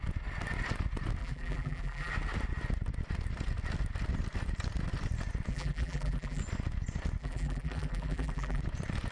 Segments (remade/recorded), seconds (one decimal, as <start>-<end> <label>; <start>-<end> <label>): 0.0-1.2 recorded; 1.2-2.1 remade; 2.1-5.5 recorded; 5.5-6.4 remade; 6.4-7.2 recorded; 7.2-8.6 remade; 8.6-9.1 recorded